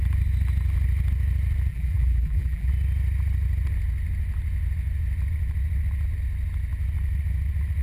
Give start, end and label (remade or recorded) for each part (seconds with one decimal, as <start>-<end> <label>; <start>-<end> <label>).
0.0-1.7 recorded; 1.7-2.7 remade; 2.7-7.8 recorded